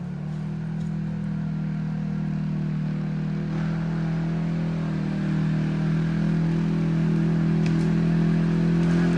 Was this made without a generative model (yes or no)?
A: yes